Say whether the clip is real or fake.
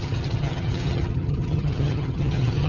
fake